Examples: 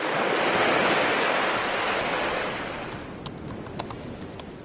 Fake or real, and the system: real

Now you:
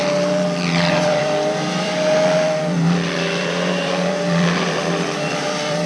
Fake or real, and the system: fake, vocoder, BigVGAN v2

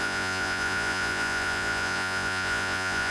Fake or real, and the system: fake, vocoder, Vocos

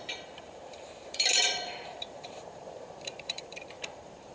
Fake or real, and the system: fake, vocoder, BigVGAN v2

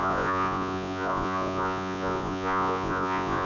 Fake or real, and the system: fake, vocoder, Vocos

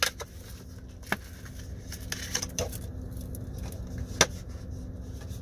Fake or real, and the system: real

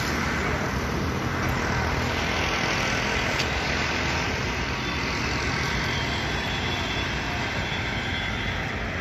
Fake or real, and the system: real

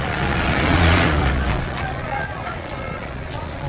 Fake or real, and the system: fake, vocoder, Vocos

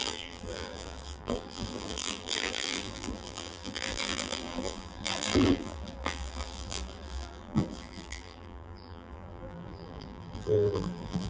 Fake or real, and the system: fake, vocoder, BigVGAN v2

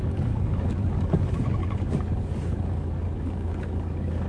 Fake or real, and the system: fake, codec, DAC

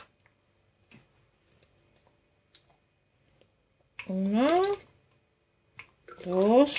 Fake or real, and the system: real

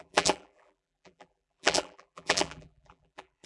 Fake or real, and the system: fake, vocoder, BigVGAN v2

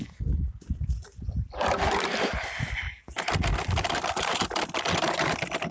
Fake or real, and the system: real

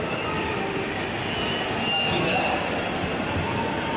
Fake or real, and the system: real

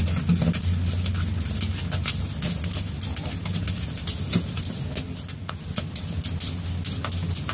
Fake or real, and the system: real